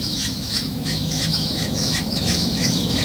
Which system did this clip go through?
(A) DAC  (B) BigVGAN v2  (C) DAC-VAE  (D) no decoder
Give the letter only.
C